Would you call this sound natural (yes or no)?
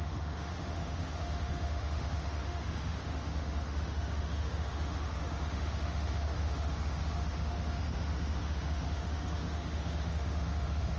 no